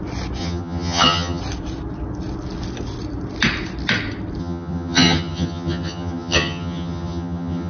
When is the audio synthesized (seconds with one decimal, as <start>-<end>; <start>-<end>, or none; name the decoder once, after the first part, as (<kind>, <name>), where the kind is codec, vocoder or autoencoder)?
0.4-1.4 (vocoder, HiFi-GAN); 4.4-7.7